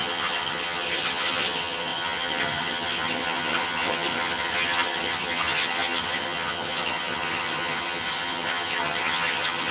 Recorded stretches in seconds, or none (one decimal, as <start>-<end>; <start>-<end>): none